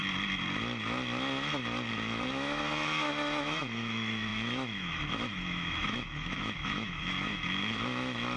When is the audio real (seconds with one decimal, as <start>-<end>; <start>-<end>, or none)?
0.0-1.9